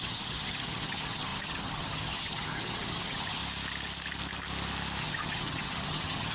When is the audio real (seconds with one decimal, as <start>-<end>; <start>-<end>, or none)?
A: 3.4-5.0